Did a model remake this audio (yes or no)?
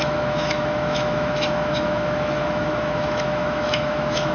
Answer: yes